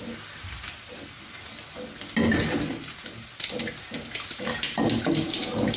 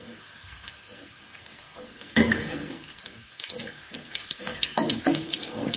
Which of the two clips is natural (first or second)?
first